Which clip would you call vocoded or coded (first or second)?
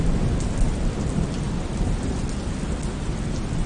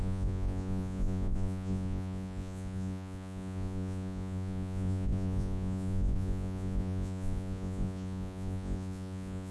second